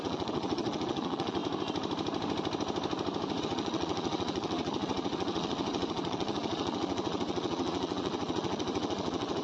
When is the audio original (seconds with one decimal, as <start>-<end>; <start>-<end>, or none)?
1.4-3.4